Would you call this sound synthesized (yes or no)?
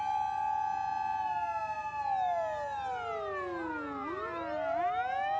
no